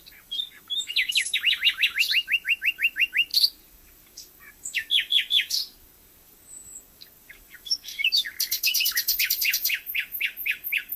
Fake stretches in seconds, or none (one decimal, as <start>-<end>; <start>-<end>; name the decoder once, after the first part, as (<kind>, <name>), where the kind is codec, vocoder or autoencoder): 0.0-11.0 (codec, DAC)